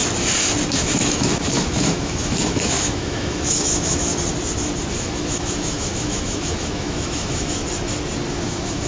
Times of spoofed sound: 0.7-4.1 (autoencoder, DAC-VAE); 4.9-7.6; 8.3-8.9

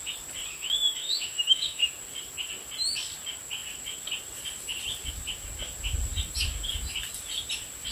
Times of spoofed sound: 0.5-1.8 (autoencoder, DAC-VAE)

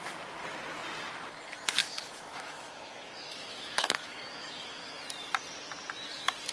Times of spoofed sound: 1.8-5.0 (autoencoder, DAC-VAE)

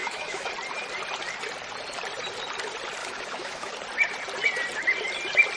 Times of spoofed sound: 0.0-0.5 (autoencoder, DAC-VAE); 3.0-3.7

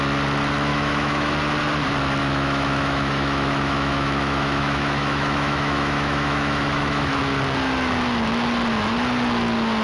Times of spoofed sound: 0.7-1.3 (autoencoder, DAC-VAE); 2.2-7.2

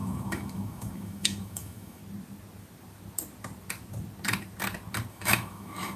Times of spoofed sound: 0.0-2.0 (autoencoder, DAC-VAE); 5.1-6.0

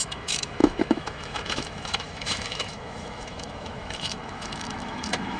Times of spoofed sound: 0.0-5.4 (autoencoder, DAC-VAE)

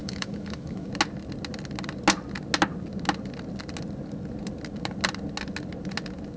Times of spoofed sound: 0.0-0.9 (autoencoder, DAC-VAE)